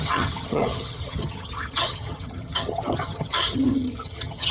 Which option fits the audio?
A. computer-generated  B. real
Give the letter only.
A